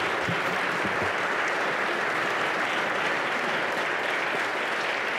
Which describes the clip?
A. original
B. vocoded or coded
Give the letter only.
A